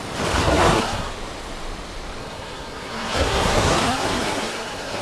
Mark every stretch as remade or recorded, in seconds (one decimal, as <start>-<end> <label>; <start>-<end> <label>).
0.0-0.4 recorded; 0.4-1.1 remade; 1.1-2.2 recorded; 2.2-5.0 remade